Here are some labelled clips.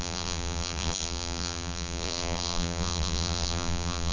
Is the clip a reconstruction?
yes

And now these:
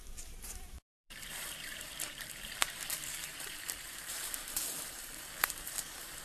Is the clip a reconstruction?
yes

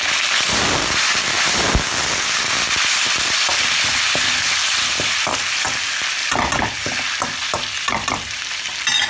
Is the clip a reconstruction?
no